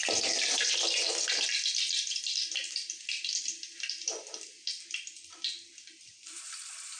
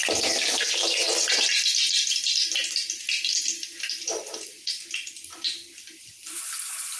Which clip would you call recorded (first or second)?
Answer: second